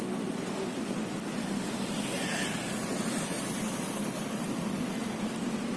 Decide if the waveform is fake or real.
real